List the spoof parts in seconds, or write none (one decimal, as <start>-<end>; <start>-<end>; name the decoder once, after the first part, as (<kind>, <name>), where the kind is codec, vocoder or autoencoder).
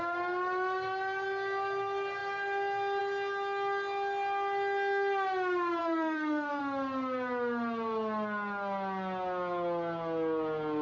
5.8-6.6 (codec, SNAC)